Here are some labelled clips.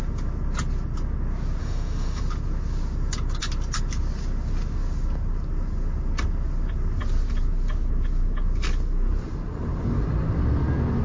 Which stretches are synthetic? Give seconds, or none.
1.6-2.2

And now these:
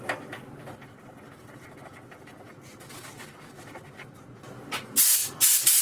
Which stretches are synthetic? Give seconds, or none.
none

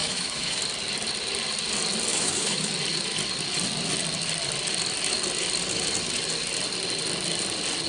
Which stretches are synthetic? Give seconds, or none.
0.0-0.6; 2.1-2.7

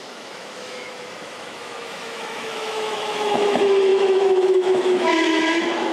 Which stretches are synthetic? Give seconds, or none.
0.0-5.9

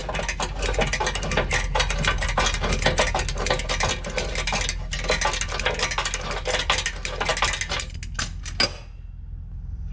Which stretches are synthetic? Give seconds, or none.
none

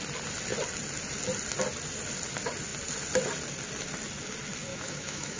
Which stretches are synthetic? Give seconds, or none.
4.7-5.4

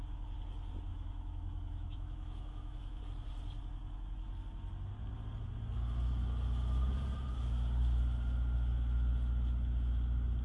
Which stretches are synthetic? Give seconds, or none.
0.9-3.0